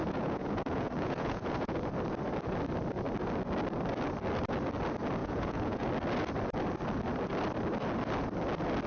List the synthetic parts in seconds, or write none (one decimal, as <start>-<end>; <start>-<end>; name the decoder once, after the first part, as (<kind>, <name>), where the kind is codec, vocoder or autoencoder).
0.0-1.9 (vocoder, Vocos); 5.2-5.9